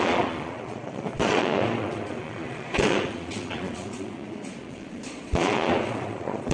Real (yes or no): no